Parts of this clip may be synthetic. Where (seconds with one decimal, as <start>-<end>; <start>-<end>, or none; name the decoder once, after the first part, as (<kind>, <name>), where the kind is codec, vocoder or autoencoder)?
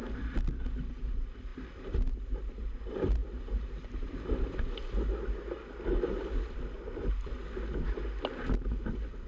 none